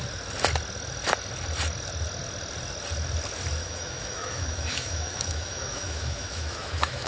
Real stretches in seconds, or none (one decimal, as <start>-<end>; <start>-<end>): 0.0-3.6

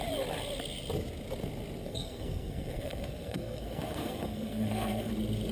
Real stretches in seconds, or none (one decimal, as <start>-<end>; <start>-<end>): 0.0-1.8; 5.1-5.5

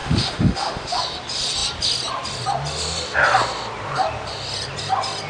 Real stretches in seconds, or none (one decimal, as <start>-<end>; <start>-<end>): 1.0-5.3

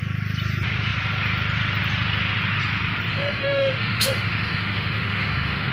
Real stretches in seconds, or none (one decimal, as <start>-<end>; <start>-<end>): 0.0-3.1

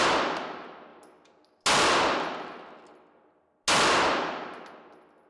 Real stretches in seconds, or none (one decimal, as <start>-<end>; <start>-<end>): 0.0-5.3

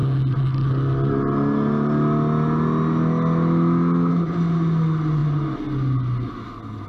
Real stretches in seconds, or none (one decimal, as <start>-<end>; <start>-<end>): 0.0-6.9

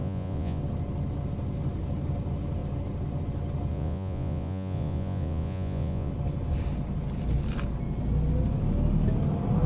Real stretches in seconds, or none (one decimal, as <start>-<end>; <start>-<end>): 0.6-3.7; 6.1-9.7